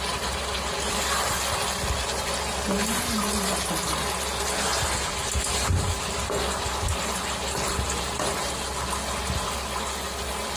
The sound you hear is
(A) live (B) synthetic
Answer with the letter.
A